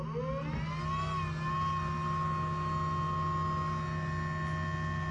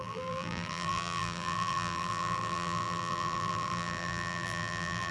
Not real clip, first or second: second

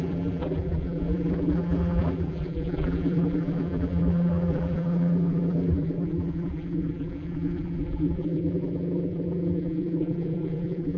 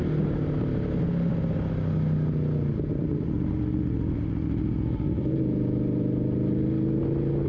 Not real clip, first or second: first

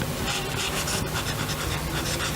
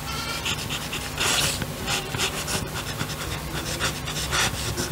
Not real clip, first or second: second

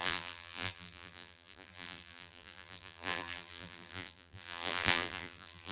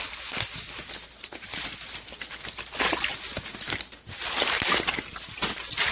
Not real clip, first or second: first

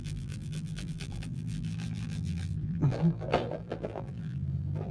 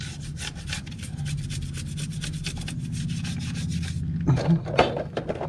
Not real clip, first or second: first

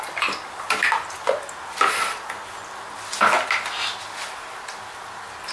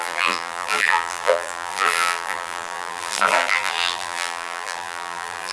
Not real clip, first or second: second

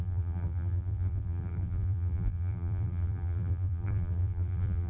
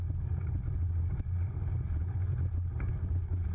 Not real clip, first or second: first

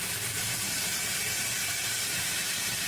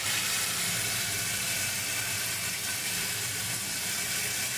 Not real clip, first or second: first